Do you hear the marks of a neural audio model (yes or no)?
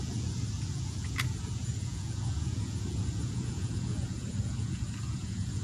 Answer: yes